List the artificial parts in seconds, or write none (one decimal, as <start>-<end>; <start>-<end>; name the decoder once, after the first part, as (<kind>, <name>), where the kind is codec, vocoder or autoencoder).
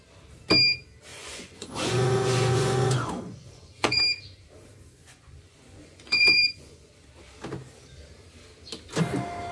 1.1-4.0 (vocoder, Vocos); 5.0-6.9